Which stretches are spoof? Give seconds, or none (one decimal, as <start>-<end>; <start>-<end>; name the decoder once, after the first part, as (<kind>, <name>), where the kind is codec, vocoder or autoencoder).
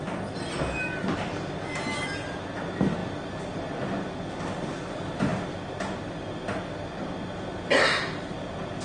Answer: none